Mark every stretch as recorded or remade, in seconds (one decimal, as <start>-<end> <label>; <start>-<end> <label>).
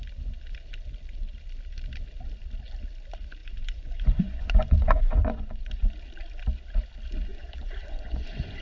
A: 0.0-3.4 recorded; 3.4-5.7 remade; 5.7-7.3 recorded; 7.3-8.6 remade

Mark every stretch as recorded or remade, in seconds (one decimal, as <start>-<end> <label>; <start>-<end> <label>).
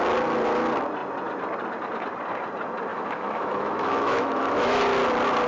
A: 0.0-2.9 recorded; 2.9-4.8 remade; 4.8-5.5 recorded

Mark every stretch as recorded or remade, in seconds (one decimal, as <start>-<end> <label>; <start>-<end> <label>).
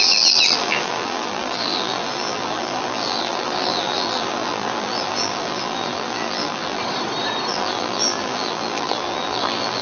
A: 0.0-6.8 remade; 6.8-7.5 recorded; 7.5-9.8 remade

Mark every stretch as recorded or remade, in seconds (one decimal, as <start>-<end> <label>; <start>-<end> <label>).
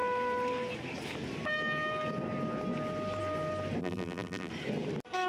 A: 0.0-3.8 recorded; 3.8-4.5 remade; 4.5-5.3 recorded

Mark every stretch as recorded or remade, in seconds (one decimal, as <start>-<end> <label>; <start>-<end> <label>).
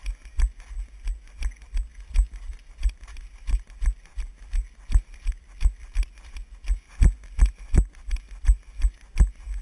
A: 0.0-9.6 recorded